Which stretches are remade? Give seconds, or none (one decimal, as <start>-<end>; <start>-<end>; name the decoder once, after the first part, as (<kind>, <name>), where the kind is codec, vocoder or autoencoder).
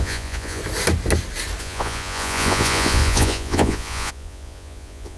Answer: 0.0-0.6 (vocoder, Vocos); 1.6-5.2